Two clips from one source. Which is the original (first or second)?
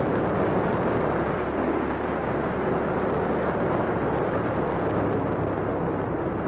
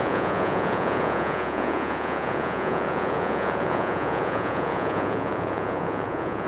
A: first